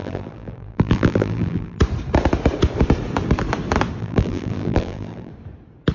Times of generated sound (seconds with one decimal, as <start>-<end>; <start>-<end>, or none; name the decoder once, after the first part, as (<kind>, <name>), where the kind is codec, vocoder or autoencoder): 0.0-1.8 (vocoder, BigVGAN v2); 4.0-5.3